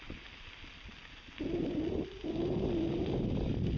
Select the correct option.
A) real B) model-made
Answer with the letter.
A